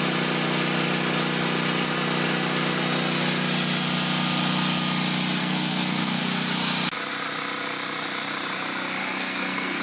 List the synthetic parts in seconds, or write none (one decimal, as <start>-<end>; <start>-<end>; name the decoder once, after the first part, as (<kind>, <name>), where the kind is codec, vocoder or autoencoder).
5.4-6.2 (codec, SNAC); 9.0-9.8